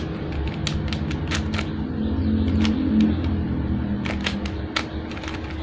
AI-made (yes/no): no